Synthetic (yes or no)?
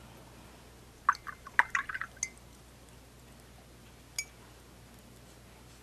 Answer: no